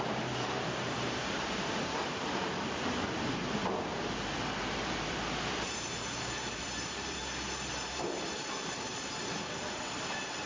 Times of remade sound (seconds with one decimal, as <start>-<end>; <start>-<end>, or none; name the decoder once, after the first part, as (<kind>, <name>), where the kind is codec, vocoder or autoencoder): 0.0-3.6 (vocoder, BigVGAN v2); 5.1-7.2; 7.7-10.5